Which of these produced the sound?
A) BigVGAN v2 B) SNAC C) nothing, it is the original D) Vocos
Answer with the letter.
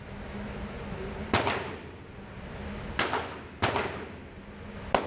C